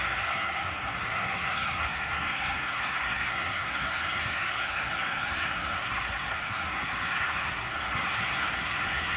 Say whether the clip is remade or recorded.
remade